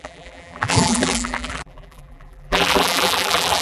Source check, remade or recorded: remade